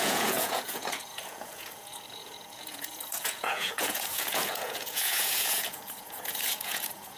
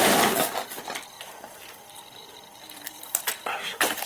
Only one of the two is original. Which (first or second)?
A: second